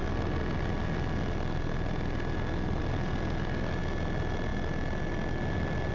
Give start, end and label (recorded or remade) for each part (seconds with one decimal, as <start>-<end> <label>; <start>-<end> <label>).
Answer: 0.0-5.9 recorded